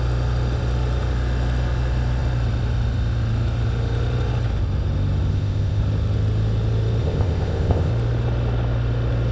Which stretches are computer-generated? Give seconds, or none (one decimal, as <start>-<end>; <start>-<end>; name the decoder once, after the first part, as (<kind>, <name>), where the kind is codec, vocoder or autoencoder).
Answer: 5.3-5.8 (codec, ZipCodec); 7.0-7.9

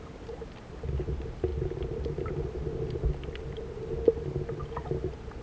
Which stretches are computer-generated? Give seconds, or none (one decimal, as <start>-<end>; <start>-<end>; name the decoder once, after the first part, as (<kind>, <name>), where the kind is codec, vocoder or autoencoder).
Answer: none

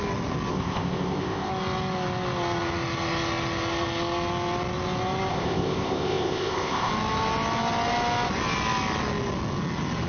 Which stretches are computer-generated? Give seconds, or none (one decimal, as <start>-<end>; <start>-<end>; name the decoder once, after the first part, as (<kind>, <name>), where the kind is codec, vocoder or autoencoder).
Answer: 0.5-1.5 (codec, ZipCodec); 5.3-6.9

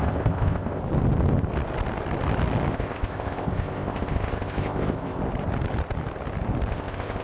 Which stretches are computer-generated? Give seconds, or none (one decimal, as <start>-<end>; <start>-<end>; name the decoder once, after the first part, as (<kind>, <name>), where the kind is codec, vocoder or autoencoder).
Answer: 0.0-0.8 (codec, ZipCodec); 2.7-5.2; 6.7-7.2

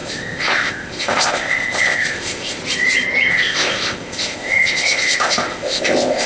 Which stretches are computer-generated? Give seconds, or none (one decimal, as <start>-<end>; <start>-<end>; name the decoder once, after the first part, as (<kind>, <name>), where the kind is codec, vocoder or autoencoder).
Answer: 0.0-2.6 (codec, ZipCodec); 3.3-6.3

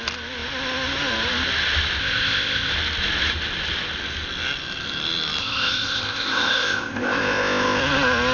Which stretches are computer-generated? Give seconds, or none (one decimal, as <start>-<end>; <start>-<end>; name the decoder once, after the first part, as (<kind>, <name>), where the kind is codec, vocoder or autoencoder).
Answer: 2.0-2.7 (codec, ZipCodec); 5.4-7.8

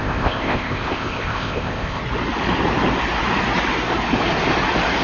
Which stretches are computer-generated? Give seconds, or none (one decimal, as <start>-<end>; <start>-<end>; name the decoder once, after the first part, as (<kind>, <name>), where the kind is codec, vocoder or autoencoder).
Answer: 0.0-2.0 (codec, ZipCodec)

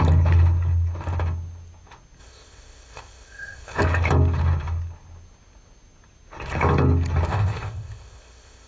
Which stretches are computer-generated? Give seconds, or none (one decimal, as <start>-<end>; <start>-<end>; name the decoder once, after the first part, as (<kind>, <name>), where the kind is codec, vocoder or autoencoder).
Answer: 2.2-3.8 (codec, ZipCodec); 7.3-8.7